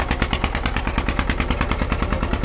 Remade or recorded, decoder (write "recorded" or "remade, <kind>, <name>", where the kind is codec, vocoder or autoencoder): recorded